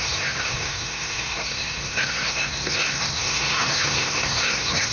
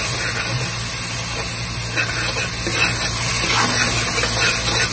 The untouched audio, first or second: second